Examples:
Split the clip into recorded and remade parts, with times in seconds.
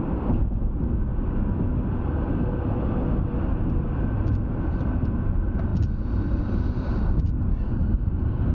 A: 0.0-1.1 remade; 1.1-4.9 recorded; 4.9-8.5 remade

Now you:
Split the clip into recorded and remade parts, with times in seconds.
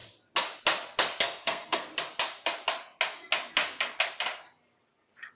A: 0.0-1.2 recorded; 1.2-1.9 remade; 1.9-5.3 recorded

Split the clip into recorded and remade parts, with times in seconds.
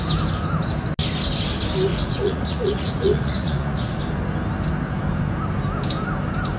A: 0.0-1.9 recorded; 1.9-4.0 remade; 4.0-6.6 recorded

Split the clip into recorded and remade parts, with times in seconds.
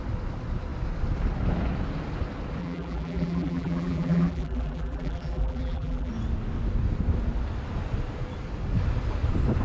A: 0.0-2.6 recorded; 2.6-6.1 remade; 6.1-9.6 recorded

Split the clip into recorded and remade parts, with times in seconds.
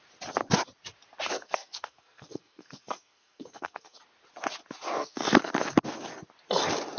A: 0.0-1.4 recorded; 1.4-4.0 remade; 4.0-5.0 recorded; 5.0-5.5 remade; 5.5-7.0 recorded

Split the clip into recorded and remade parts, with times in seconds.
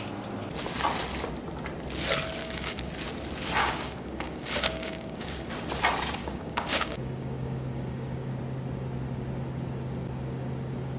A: 0.0-2.4 recorded; 2.4-2.9 remade; 2.9-3.6 recorded; 3.6-5.5 remade; 5.5-6.2 recorded; 6.2-8.4 remade; 8.4-11.0 recorded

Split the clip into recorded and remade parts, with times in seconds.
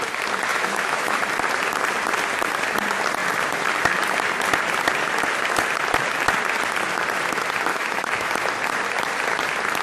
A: 0.0-0.5 recorded; 0.5-1.2 remade; 1.2-7.7 recorded; 7.7-8.3 remade; 8.3-9.8 recorded